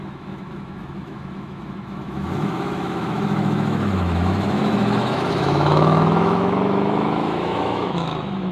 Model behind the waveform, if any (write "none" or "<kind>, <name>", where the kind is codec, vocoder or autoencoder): autoencoder, DAC-VAE